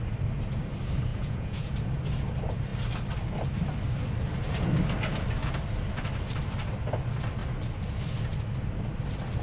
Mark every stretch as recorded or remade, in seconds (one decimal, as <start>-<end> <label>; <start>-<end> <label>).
0.0-1.1 recorded; 1.1-1.7 remade; 1.7-9.4 recorded